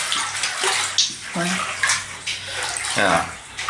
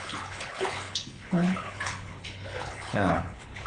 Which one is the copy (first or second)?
second